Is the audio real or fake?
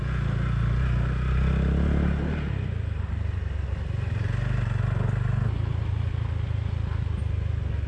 real